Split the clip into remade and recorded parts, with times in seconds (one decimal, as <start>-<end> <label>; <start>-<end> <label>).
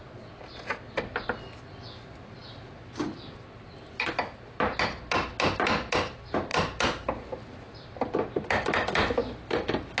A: 0.0-10.0 recorded